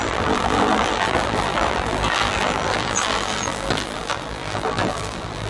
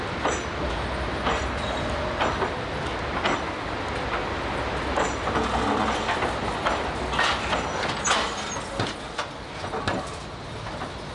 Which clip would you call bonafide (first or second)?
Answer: second